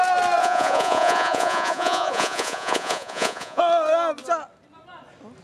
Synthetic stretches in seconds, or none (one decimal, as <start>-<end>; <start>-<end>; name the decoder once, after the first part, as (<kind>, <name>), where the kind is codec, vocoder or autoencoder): 0.4-3.6 (vocoder, Vocos)